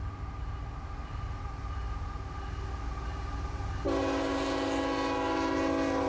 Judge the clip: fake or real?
real